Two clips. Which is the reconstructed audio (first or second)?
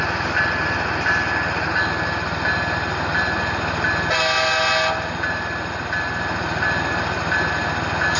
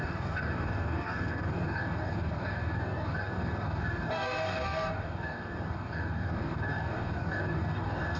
second